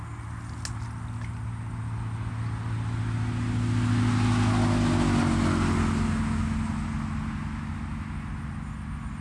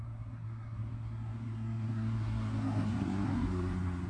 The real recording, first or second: first